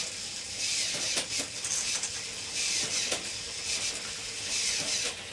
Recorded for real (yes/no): yes